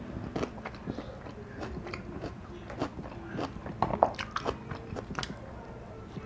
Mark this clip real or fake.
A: real